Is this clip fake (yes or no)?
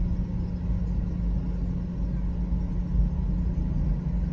no